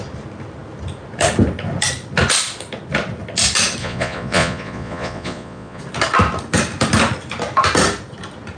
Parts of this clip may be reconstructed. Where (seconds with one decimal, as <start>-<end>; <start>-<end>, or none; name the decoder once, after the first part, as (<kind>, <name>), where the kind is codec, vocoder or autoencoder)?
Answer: 3.8-5.8 (vocoder, Vocos)